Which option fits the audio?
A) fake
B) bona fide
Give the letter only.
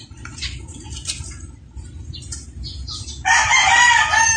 B